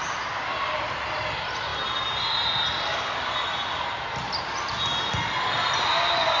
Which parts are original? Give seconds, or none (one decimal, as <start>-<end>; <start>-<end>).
0.0-6.4